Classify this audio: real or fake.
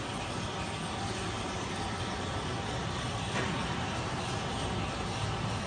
real